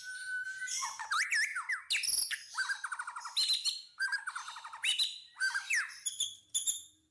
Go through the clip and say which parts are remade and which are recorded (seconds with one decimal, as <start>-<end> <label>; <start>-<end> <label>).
0.0-1.5 remade; 1.5-4.4 recorded; 4.4-7.1 remade